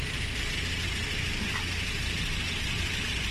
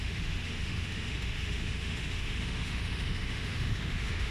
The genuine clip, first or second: first